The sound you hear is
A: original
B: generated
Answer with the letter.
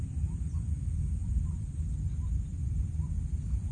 A